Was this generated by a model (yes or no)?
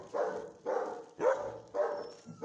no